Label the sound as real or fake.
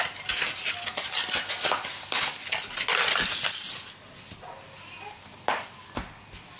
real